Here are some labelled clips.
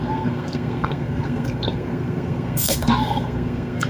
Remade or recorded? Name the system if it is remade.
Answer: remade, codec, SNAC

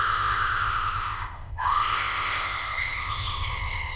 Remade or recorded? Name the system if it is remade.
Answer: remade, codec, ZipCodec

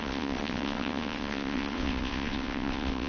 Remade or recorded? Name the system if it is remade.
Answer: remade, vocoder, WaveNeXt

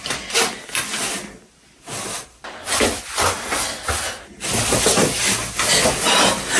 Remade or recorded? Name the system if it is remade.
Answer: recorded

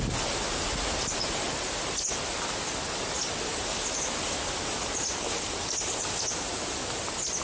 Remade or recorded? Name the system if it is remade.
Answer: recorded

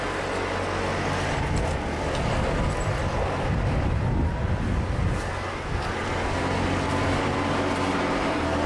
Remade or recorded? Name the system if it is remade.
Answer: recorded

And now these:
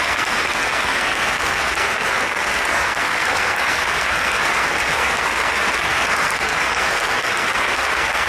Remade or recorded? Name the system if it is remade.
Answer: remade, codec, SNAC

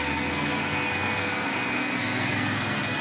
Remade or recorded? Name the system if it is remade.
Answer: remade, codec, SNAC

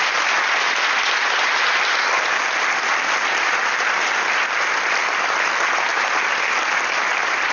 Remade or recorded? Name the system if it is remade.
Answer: recorded